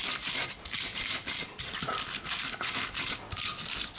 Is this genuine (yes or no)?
yes